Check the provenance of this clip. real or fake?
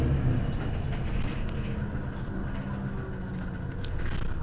real